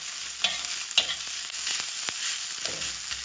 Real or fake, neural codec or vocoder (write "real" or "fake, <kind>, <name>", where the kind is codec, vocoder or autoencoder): real